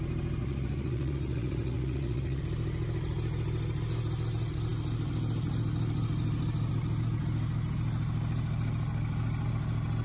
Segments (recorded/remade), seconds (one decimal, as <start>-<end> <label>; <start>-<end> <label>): 0.0-0.4 recorded; 0.4-2.4 remade; 2.4-10.0 recorded